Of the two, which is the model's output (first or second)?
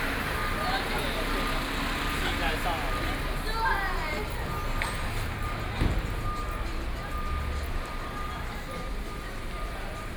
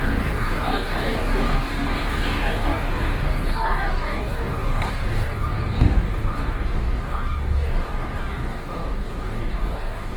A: second